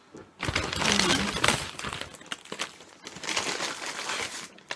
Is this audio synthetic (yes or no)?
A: no